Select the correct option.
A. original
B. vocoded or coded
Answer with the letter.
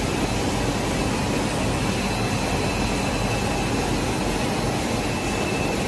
A